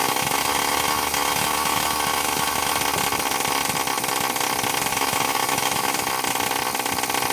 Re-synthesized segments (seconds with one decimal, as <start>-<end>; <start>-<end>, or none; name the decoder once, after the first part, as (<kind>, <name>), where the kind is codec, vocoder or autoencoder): 0.0-2.7 (autoencoder, DAC-VAE); 4.9-6.1